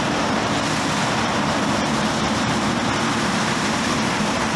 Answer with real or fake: fake